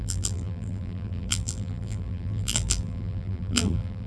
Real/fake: fake